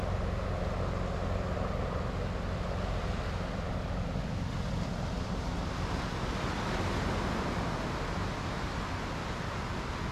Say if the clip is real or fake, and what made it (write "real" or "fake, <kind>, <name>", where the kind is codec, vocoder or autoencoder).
real